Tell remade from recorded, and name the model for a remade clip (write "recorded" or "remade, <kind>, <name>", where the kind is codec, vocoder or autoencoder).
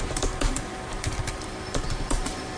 remade, vocoder, BigVGAN v2